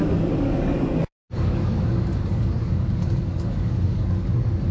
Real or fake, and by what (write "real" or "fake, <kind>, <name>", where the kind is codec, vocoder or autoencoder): fake, codec, DAC